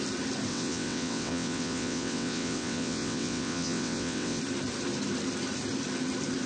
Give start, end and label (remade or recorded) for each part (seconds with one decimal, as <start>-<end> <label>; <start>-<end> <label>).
0.0-0.5 recorded; 0.5-4.4 remade; 4.4-6.5 recorded

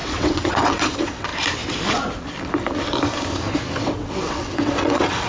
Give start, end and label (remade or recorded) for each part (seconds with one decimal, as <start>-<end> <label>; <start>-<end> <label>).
0.0-1.3 remade; 1.3-3.8 recorded; 3.8-5.3 remade

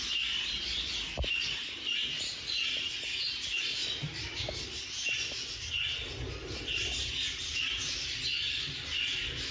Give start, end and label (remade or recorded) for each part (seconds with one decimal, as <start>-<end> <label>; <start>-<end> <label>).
0.0-9.5 recorded

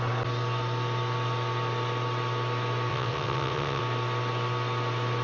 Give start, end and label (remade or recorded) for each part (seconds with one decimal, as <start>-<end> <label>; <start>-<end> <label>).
0.0-2.9 recorded; 2.9-3.8 remade; 3.8-5.2 recorded

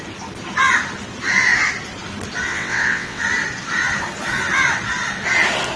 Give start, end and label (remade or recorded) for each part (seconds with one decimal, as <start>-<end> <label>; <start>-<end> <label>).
0.0-2.5 recorded; 2.5-3.2 remade; 3.2-5.8 recorded

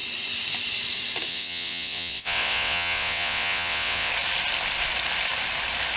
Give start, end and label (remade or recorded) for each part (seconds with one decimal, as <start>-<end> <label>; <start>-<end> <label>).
0.0-1.3 recorded; 1.3-4.1 remade; 4.1-6.0 recorded

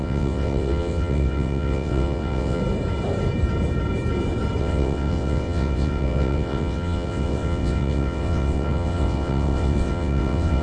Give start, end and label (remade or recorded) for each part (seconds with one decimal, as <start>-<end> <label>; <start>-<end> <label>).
0.0-2.6 remade; 2.6-4.6 recorded; 4.6-10.6 remade